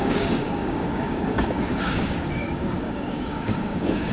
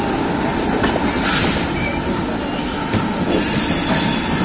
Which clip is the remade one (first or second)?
first